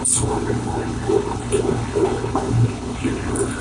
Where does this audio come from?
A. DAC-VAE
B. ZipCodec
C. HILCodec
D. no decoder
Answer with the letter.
C